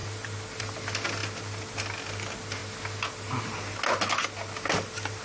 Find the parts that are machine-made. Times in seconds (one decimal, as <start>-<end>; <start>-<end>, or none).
none